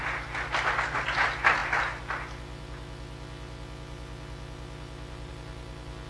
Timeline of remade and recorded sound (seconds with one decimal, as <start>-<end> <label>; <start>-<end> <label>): 0.0-6.1 recorded